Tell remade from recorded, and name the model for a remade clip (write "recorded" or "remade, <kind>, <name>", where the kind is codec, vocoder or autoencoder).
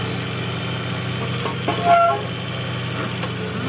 recorded